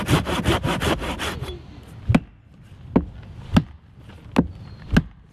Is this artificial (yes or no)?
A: no